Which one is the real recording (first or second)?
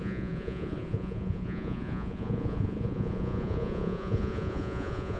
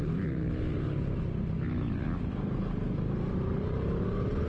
second